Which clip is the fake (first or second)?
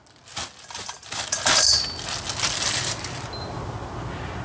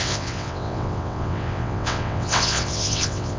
second